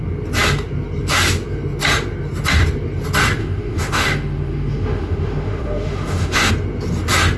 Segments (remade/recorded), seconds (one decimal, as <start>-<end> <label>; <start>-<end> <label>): 0.0-3.4 recorded; 3.4-6.5 remade; 6.5-7.4 recorded